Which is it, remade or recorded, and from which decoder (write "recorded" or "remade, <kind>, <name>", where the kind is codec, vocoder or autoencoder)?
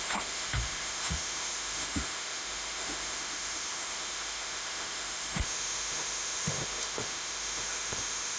remade, autoencoder, DAC-VAE